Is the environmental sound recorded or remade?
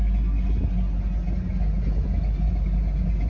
recorded